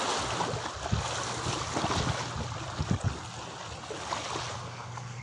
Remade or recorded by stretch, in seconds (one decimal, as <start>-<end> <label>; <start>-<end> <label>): 0.0-4.5 recorded; 4.5-5.2 remade